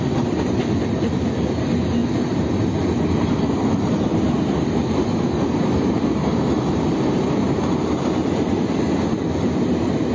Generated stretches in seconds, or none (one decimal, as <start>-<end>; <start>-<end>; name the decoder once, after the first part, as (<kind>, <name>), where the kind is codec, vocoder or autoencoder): none